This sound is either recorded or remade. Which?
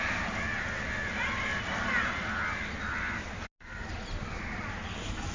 recorded